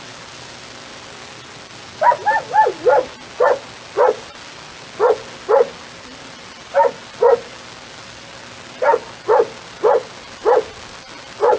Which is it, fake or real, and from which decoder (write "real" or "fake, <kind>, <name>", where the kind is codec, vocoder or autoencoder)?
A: real